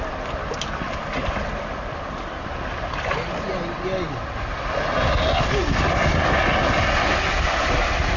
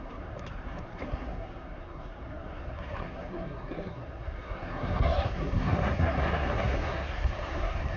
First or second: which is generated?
second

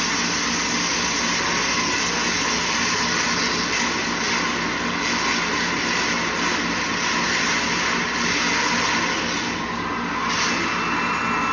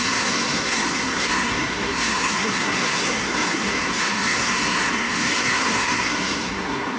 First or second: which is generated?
second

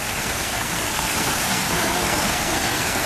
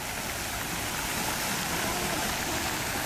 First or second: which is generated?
first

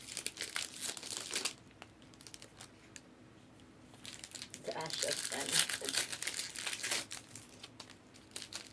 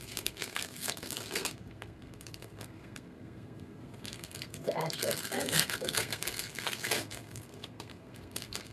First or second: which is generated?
second